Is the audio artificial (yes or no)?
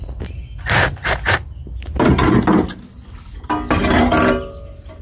no